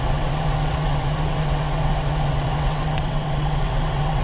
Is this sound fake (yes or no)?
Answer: yes